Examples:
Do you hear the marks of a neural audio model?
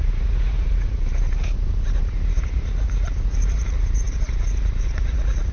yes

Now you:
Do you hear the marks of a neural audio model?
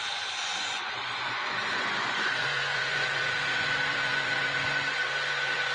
yes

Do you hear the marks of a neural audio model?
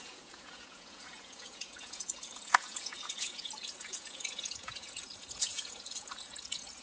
yes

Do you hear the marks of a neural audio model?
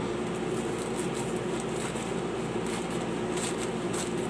no